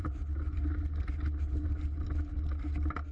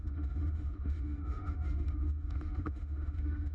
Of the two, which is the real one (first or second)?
first